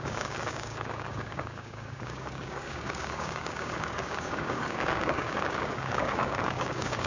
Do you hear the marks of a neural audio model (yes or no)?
yes